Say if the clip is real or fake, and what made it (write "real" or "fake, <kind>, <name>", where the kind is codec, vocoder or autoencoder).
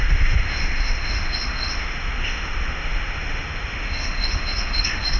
fake, autoencoder, DAC-VAE